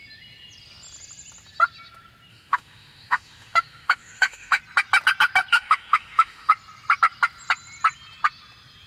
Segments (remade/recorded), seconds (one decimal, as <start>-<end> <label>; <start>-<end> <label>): 0.0-2.3 recorded; 2.3-4.6 remade; 4.6-5.5 recorded; 5.5-6.5 remade; 6.5-8.9 recorded